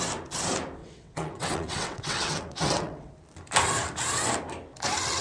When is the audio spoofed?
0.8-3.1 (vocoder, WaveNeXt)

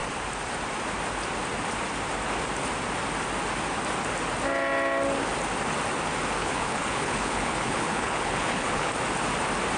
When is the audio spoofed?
6.4-8.9 (codec, HILCodec)

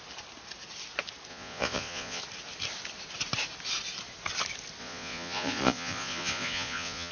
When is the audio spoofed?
1.3-2.2 (vocoder, Vocos); 4.8-7.1

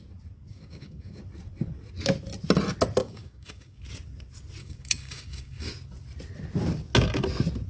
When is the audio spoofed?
0.5-1.2 (codec, DAC); 3.0-3.8; 4.6-5.7

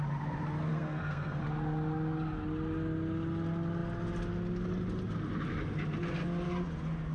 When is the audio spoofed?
0.7-1.4 (codec, SNAC)

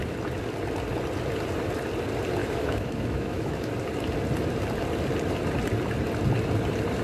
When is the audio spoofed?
2.4-3.7 (autoencoder, DAC-VAE)